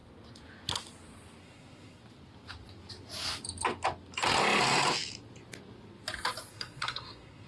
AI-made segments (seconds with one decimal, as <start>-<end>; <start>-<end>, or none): 1.4-2.0; 6.5-7.5